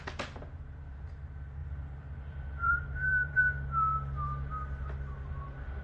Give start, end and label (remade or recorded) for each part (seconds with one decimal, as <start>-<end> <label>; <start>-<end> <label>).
0.0-1.6 recorded; 1.6-3.4 remade; 3.4-5.8 recorded